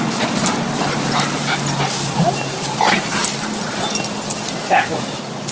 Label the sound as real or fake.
real